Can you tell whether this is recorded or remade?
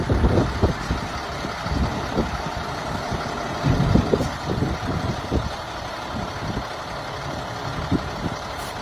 remade